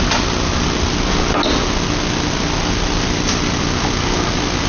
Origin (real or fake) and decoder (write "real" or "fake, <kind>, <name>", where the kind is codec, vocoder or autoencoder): real